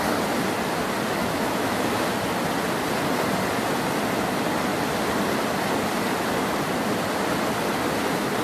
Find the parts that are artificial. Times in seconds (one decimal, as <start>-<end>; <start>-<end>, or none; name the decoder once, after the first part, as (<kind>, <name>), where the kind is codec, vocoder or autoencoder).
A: 1.2-1.9 (autoencoder, DAC-VAE)